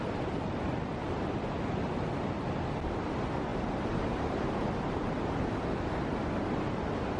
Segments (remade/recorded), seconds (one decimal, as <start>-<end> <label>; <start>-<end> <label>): 0.0-3.5 recorded; 3.5-5.5 remade; 5.5-7.2 recorded